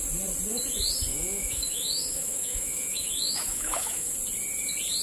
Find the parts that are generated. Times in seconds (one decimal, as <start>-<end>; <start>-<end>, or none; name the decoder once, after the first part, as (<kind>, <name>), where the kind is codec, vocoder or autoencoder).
1.1-4.1 (autoencoder, DAC-VAE)